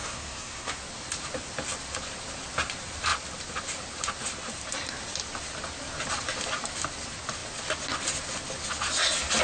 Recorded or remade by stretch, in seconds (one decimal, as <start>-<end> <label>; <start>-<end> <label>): 0.0-0.8 remade; 0.8-9.4 recorded